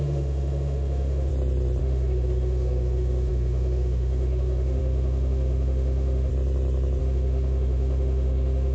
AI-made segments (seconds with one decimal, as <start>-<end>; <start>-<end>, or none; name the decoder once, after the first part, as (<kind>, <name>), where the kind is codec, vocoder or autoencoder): 0.0-1.3 (autoencoder, DAC-VAE); 1.8-6.3; 7.0-8.7